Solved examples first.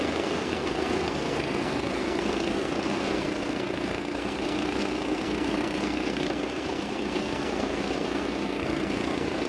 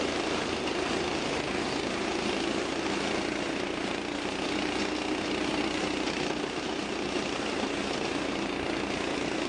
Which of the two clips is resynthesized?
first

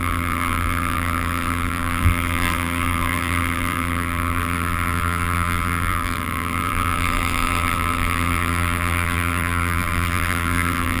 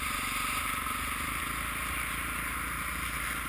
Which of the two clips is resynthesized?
first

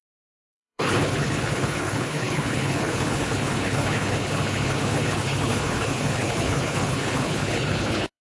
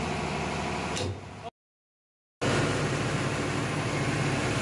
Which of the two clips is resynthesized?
first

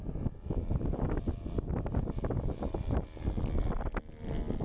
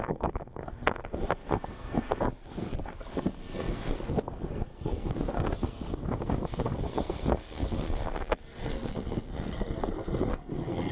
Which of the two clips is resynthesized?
second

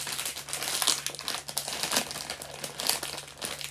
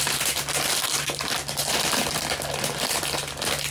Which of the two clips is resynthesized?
second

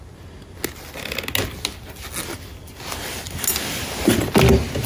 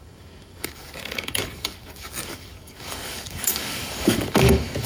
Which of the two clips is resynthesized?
second